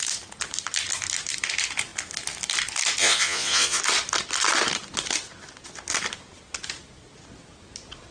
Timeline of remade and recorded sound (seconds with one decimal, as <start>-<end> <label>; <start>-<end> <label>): 0.0-3.0 recorded; 3.0-3.8 remade; 3.8-8.1 recorded